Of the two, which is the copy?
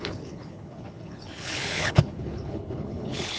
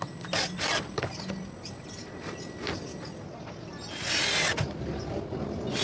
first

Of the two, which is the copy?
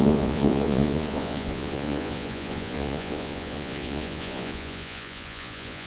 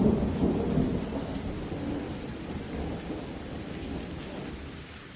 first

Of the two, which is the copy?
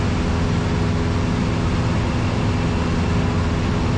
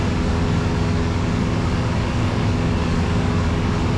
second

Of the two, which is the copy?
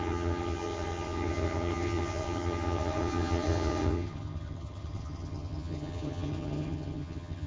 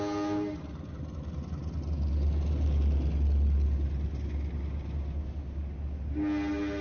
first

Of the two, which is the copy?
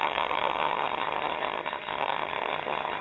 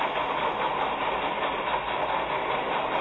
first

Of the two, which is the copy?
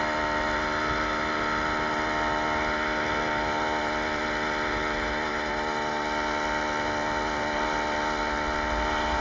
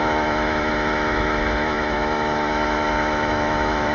second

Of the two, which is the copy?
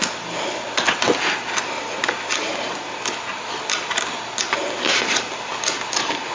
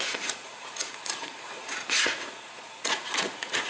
second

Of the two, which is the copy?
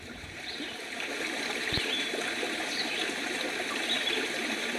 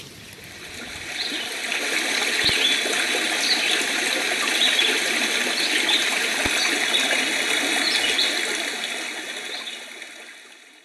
first